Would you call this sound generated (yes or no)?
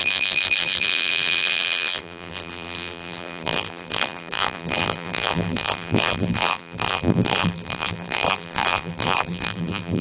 yes